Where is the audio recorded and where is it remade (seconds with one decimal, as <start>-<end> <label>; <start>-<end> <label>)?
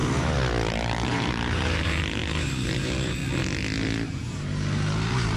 0.0-0.7 recorded; 0.7-3.2 remade; 3.2-4.1 recorded; 4.1-5.4 remade